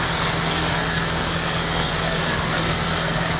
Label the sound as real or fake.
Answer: fake